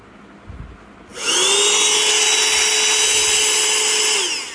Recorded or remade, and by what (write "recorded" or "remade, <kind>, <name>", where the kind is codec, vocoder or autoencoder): recorded